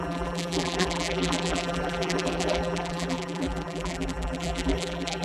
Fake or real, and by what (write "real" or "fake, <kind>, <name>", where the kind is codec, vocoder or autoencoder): fake, vocoder, BigVGAN v2